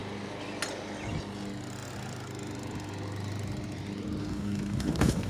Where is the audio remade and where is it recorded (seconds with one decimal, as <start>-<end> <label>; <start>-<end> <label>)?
0.0-4.2 recorded; 4.2-5.3 remade